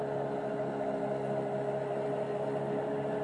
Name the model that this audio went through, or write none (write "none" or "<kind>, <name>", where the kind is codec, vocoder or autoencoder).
none